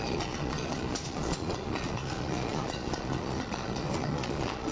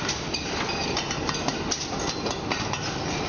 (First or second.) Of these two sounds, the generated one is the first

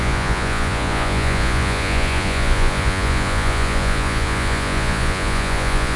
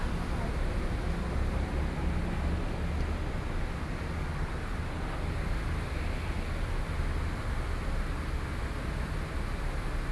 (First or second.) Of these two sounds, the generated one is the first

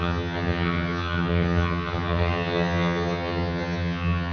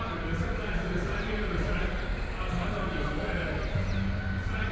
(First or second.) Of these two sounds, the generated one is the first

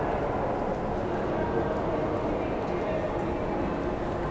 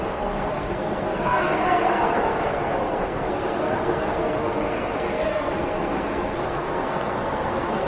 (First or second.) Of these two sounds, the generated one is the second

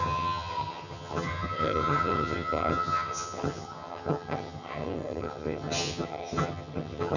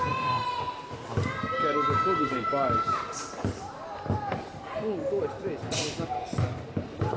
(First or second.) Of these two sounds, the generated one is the first